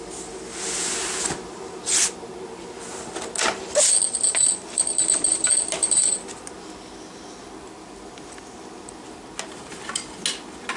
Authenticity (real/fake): real